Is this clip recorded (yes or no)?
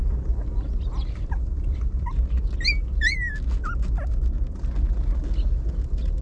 yes